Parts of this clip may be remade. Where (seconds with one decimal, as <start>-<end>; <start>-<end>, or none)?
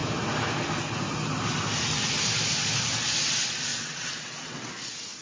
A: 3.7-4.7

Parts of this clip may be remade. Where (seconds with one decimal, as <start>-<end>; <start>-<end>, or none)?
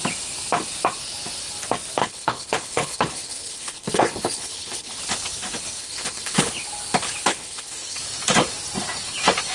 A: 2.0-5.0; 5.8-6.5; 7.3-8.0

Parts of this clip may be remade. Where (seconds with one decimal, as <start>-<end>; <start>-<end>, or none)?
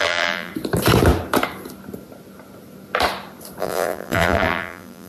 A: 0.0-0.5; 3.6-5.1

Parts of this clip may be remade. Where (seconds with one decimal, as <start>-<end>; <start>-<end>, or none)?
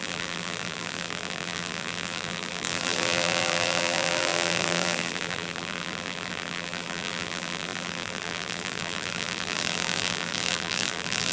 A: 0.0-11.3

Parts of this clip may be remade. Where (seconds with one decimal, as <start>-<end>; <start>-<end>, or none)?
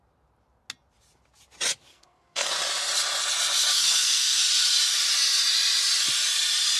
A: 1.9-2.5; 3.7-4.4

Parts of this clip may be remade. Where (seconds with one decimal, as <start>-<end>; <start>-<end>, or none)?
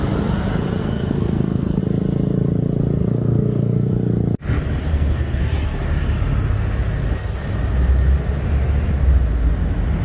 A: 0.8-1.8; 3.0-3.9; 4.9-5.4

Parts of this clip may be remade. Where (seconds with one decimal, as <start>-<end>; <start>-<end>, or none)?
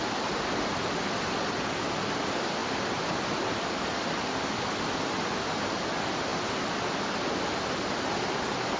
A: none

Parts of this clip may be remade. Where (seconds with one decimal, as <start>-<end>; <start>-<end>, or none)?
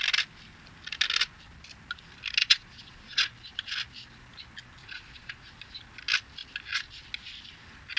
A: 2.4-3.3; 4.8-5.5